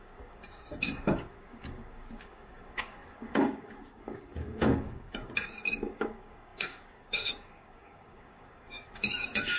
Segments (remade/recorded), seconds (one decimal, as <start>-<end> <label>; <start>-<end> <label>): 0.0-9.6 remade